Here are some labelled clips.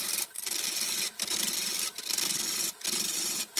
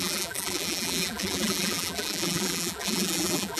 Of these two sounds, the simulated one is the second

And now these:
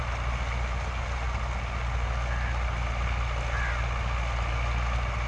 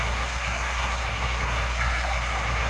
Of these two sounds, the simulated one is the second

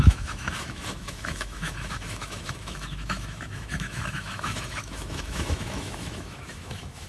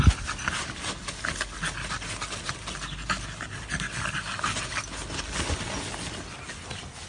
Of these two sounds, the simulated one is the first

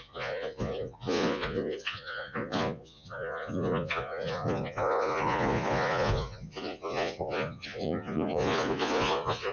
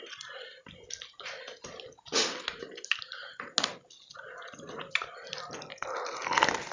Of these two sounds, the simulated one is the first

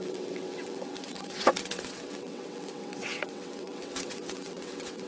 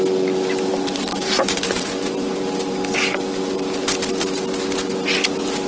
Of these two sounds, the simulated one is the first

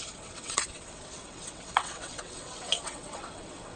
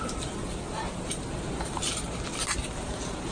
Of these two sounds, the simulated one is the first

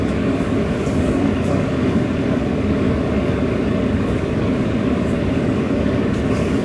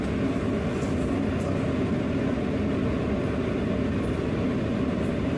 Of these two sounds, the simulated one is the first